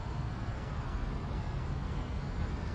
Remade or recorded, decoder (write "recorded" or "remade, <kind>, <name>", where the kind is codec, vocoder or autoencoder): remade, codec, SNAC